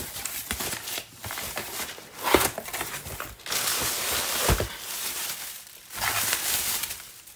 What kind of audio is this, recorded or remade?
remade